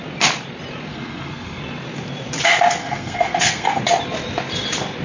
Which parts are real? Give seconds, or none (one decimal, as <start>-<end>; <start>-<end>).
0.0-0.9; 1.6-2.8; 3.8-5.0